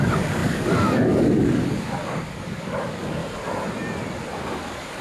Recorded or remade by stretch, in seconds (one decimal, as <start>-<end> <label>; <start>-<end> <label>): 0.0-3.2 remade; 3.2-4.4 recorded; 4.4-5.0 remade